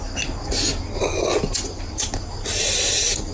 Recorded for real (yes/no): yes